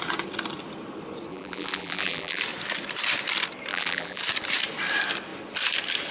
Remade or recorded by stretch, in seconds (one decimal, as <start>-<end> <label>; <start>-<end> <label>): 0.0-1.3 recorded; 1.3-2.4 remade; 2.4-3.7 recorded; 3.7-4.2 remade; 4.2-6.1 recorded